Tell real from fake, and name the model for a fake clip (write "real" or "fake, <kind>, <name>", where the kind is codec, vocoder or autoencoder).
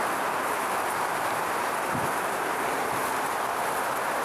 real